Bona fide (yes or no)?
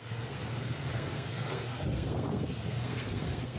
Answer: no